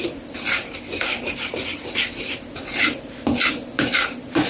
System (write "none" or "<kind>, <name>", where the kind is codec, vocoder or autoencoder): none